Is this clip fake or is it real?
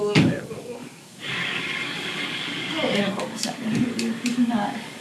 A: fake